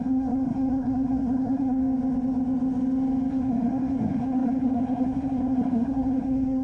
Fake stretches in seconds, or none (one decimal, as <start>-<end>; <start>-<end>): 0.0-1.8; 3.3-6.6

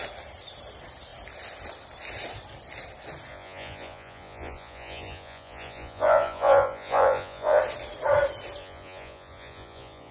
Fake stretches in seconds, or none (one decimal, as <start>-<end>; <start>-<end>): 3.3-7.6; 8.6-10.1

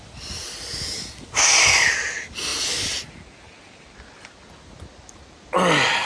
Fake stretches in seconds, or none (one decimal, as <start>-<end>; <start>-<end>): none

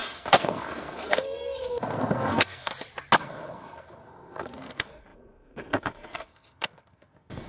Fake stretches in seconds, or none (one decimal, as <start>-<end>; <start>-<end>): 0.0-2.7; 3.2-7.5

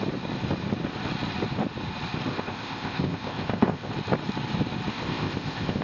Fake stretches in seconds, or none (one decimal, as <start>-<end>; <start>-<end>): 2.3-3.9; 4.9-5.8

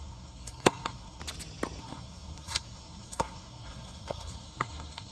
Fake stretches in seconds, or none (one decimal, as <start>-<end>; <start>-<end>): 0.0-1.2; 1.8-5.1